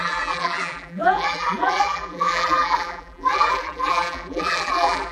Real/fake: fake